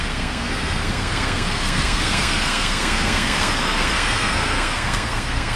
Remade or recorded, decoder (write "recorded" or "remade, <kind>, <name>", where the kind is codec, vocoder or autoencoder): remade, codec, SNAC